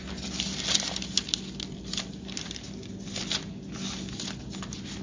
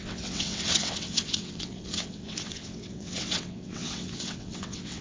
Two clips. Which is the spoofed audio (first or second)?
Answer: second